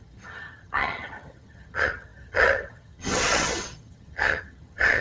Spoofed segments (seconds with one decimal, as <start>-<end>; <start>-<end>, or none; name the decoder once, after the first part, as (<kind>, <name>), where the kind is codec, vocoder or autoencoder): 0.0-5.0 (vocoder, HiFi-GAN)